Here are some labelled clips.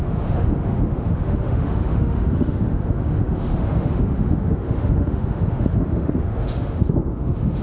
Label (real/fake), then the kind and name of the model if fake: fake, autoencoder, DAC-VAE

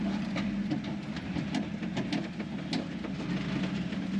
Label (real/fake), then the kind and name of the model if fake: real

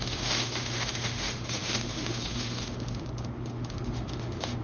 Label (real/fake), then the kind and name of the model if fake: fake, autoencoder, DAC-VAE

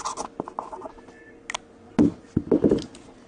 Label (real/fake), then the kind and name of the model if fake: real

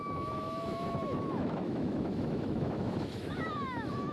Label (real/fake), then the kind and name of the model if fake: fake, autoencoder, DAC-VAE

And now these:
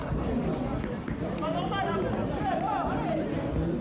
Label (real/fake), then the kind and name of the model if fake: real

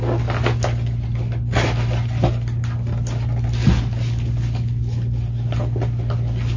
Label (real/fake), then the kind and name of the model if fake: real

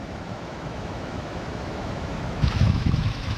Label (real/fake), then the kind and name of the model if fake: fake, autoencoder, DAC-VAE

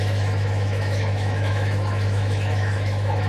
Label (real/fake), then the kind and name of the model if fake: fake, autoencoder, DAC-VAE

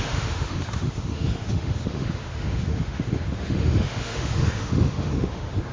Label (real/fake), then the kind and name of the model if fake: fake, autoencoder, DAC-VAE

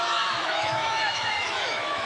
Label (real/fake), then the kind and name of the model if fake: fake, autoencoder, DAC-VAE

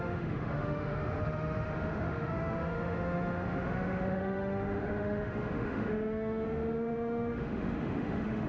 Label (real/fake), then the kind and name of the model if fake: fake, autoencoder, DAC-VAE